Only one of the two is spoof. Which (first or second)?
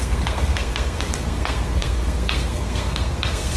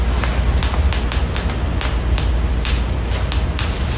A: first